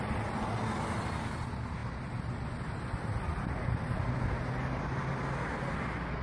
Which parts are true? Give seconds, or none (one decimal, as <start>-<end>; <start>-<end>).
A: 0.0-6.2